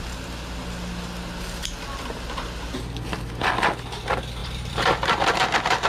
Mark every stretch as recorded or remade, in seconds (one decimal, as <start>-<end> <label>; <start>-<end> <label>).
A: 0.0-4.4 recorded; 4.4-5.3 remade; 5.3-5.9 recorded